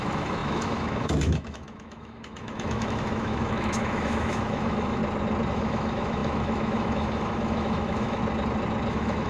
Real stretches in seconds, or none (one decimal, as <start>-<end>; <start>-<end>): 5.0-5.5; 8.2-8.9